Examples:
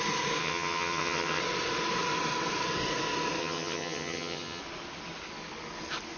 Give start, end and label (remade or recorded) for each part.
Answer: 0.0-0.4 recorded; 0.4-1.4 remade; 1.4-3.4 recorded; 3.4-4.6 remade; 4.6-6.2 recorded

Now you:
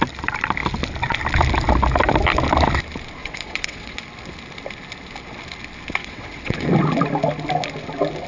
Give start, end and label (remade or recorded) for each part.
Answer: 0.0-3.2 recorded; 3.2-4.0 remade; 4.0-6.0 recorded; 6.0-6.7 remade; 6.7-8.3 recorded

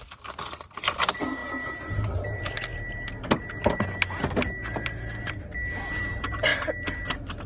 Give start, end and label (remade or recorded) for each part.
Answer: 0.0-7.5 recorded

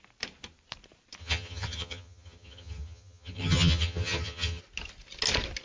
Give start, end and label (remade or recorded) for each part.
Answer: 0.0-1.2 recorded; 1.2-4.6 remade; 4.6-5.6 recorded

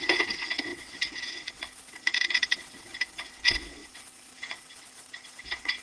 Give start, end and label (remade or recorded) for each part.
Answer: 0.0-5.8 remade

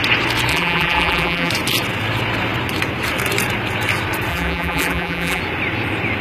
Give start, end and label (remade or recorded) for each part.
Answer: 0.0-0.5 recorded; 0.5-1.5 remade; 1.5-4.3 recorded; 4.3-5.4 remade; 5.4-6.2 recorded

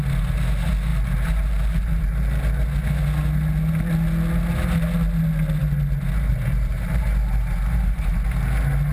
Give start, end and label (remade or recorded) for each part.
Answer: 0.0-6.3 recorded; 6.3-8.1 remade; 8.1-8.9 recorded

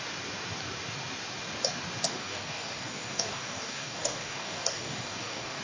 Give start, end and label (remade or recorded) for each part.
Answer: 0.0-2.1 recorded; 2.1-5.6 remade